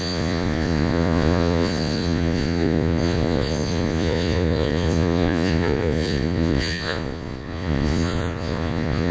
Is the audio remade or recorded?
remade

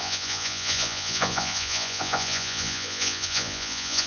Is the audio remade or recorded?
remade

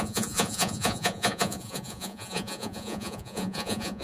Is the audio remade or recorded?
remade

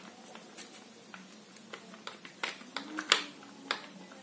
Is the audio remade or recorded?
recorded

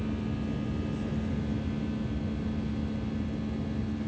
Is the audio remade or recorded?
recorded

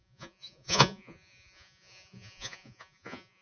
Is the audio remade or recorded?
remade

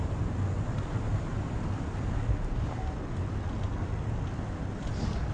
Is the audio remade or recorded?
recorded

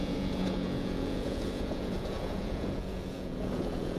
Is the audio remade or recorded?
remade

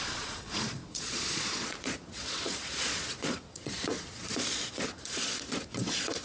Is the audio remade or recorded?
remade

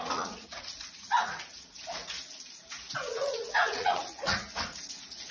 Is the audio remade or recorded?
remade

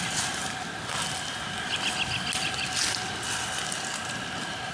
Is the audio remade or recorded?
recorded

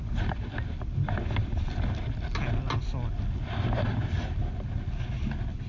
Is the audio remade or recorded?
recorded